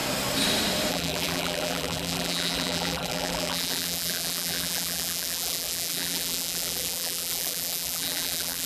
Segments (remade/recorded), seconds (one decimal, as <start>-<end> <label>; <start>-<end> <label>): 0.0-0.9 recorded; 0.9-8.7 remade